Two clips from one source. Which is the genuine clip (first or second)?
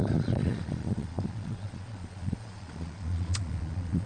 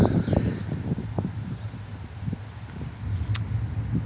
second